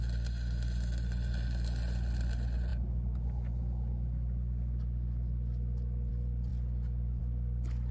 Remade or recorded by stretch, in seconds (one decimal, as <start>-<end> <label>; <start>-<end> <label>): 0.0-7.9 recorded

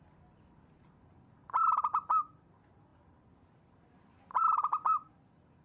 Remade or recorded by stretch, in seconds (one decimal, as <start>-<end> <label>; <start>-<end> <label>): 0.0-5.6 remade

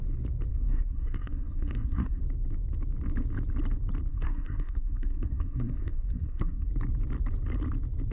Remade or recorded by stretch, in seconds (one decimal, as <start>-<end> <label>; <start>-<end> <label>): 0.0-0.5 recorded; 0.5-2.2 remade; 2.2-4.1 recorded; 4.1-6.7 remade; 6.7-8.1 recorded

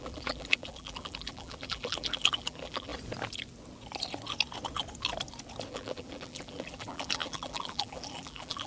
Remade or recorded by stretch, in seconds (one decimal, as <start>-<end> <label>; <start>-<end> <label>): 0.0-2.9 remade; 2.9-5.7 recorded; 5.7-8.7 remade

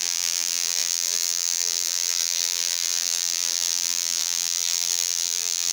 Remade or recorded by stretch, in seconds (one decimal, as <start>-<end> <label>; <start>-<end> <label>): 0.0-5.7 remade

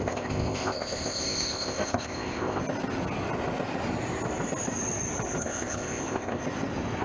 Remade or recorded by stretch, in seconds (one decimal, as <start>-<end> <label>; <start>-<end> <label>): 0.0-2.6 remade; 2.6-5.4 recorded; 5.4-6.4 remade; 6.4-7.0 recorded